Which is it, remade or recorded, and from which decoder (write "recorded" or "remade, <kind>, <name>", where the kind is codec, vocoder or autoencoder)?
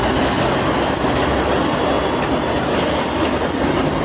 recorded